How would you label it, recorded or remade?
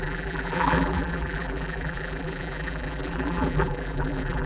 remade